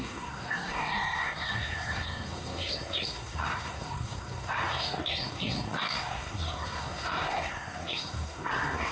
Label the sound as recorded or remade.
remade